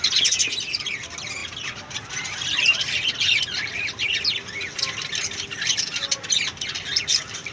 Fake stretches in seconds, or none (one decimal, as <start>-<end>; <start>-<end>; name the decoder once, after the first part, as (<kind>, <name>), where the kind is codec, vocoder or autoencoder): 1.4-5.5 (vocoder, BigVGAN v2)